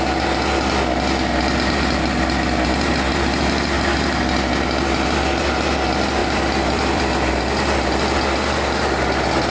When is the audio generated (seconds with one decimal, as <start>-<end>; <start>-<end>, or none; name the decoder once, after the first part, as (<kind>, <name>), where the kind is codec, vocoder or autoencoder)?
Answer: 6.2-7.0 (vocoder, BigVGAN v2)